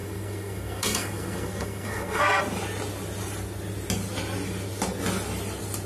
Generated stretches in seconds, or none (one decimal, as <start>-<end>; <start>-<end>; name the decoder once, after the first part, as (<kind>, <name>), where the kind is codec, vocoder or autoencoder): 0.0-2.4 (codec, SNAC)